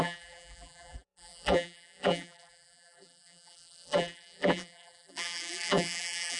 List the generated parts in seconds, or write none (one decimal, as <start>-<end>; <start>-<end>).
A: 0.0-6.4